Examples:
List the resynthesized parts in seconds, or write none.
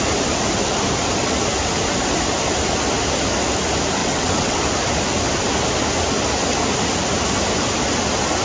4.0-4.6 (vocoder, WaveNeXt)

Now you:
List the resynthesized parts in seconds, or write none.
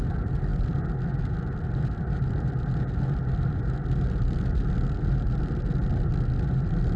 none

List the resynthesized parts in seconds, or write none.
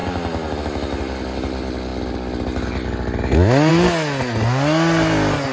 none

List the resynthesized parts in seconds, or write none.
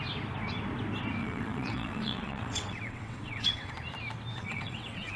1.2-3.7 (vocoder, WaveNeXt); 4.3-5.2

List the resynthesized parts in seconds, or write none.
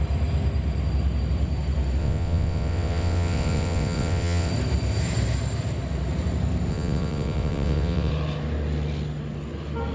2.0-4.5 (vocoder, WaveNeXt); 6.7-8.1